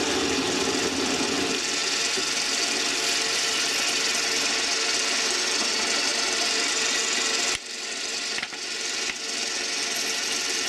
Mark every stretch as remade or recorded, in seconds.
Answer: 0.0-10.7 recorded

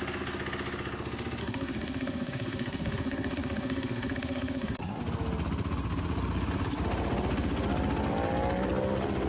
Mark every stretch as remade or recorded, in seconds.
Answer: 0.0-1.4 recorded; 1.4-5.0 remade; 5.0-9.3 recorded

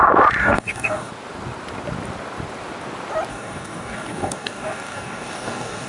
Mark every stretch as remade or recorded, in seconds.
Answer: 0.0-0.4 recorded; 0.4-1.1 remade; 1.1-3.3 recorded; 3.3-5.9 remade

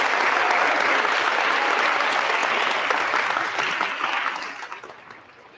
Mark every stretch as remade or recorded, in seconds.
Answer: 0.0-5.6 recorded